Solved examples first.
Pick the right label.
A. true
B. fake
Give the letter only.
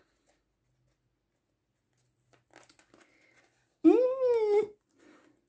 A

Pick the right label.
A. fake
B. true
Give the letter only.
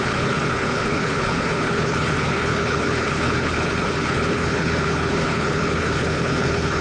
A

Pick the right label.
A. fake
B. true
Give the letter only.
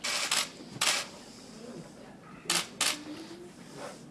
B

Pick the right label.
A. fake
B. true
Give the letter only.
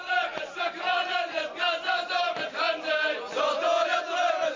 B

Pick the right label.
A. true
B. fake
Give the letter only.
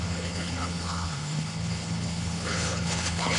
B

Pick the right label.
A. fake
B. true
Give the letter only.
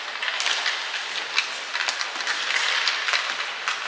B